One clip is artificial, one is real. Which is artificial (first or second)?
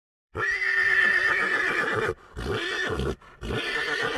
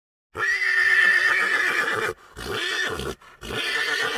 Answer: first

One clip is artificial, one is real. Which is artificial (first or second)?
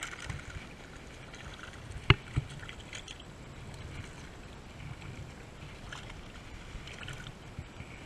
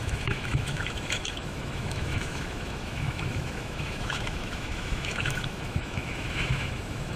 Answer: second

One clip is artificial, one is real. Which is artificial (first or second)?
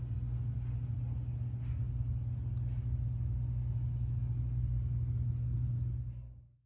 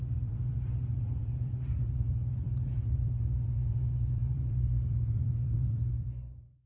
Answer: second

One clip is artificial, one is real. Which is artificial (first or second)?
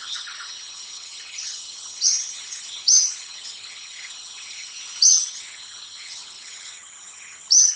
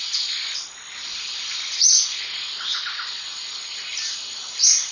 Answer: first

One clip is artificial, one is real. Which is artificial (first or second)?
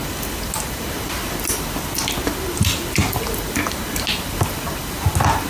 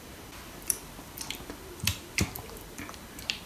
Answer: second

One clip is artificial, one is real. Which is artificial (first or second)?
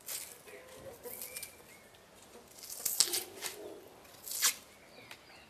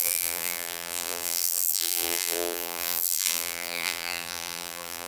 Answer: second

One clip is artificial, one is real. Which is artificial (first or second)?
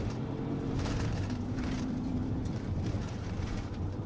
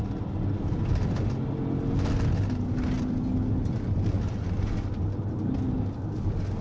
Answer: first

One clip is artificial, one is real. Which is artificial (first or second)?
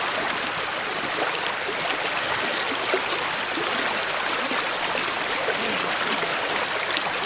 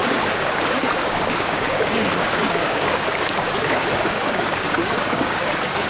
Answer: second